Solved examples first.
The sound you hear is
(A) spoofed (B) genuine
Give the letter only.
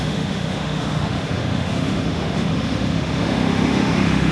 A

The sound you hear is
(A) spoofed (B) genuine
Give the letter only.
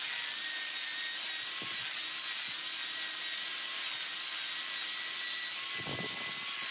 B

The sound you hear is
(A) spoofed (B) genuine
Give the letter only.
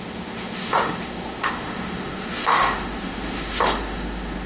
A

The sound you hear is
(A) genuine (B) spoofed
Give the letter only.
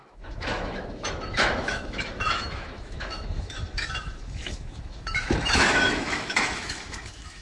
B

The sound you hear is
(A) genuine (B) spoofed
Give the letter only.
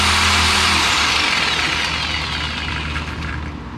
A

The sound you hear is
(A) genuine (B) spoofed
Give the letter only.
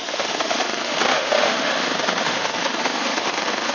B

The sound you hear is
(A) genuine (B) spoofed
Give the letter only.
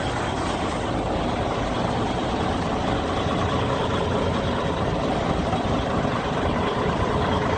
A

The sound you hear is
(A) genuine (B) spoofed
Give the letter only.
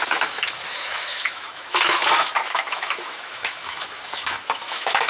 B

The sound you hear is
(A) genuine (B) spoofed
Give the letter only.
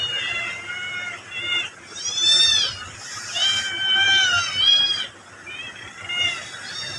A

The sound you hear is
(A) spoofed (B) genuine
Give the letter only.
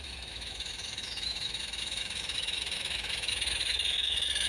A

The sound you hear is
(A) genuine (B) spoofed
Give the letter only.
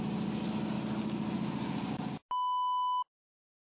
A